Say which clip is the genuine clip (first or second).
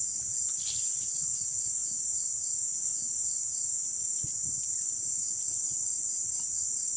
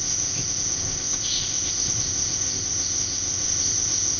first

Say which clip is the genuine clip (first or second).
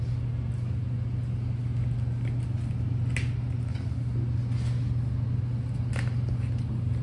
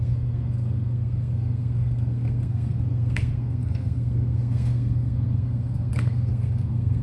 first